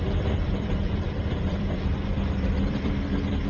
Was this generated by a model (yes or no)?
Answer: yes